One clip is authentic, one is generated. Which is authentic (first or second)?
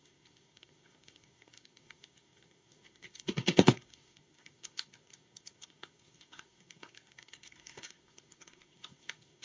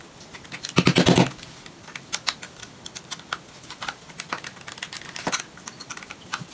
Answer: second